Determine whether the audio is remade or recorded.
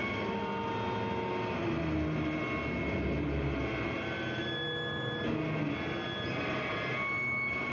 recorded